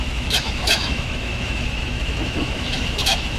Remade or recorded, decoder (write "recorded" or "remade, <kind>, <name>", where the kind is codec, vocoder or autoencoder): remade, autoencoder, DAC-VAE